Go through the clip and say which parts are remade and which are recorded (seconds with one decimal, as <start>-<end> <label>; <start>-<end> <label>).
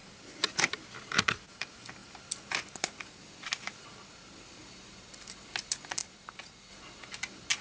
0.0-7.6 recorded